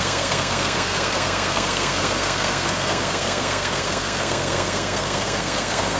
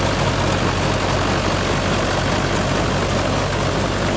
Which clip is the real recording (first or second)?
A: second